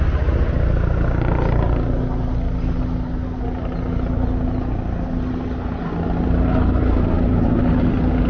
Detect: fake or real real